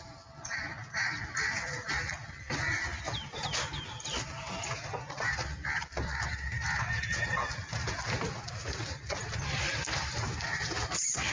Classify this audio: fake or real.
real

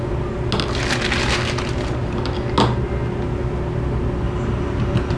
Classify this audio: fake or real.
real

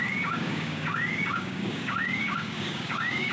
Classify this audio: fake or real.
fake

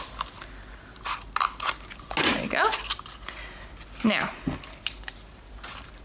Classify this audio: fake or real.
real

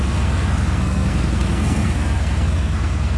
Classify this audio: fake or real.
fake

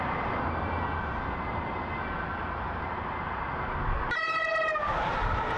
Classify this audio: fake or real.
real